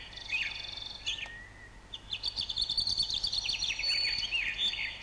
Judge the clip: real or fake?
real